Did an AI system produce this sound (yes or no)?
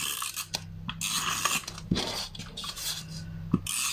no